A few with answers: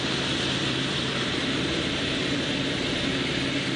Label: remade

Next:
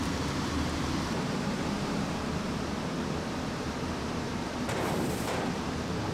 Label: remade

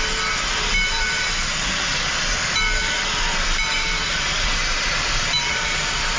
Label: remade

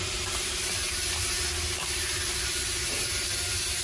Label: remade